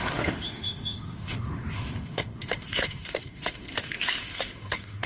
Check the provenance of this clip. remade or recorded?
remade